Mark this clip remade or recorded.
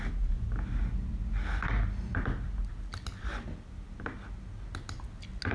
recorded